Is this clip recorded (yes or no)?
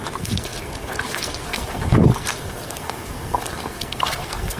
no